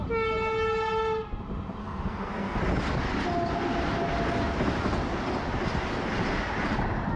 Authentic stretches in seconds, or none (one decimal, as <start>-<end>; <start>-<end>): 0.0-1.8; 2.6-7.2